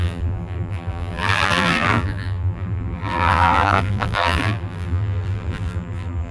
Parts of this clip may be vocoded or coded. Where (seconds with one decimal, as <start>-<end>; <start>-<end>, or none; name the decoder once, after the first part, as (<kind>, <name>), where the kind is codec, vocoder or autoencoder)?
0.0-6.3 (vocoder, BigVGAN v2)